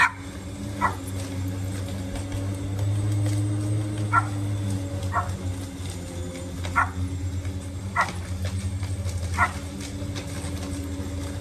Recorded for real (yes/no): yes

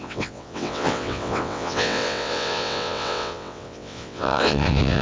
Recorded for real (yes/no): no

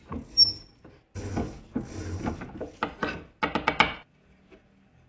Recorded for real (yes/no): yes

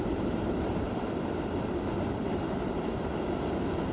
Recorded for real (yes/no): no